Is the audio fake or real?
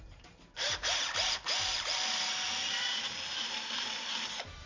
fake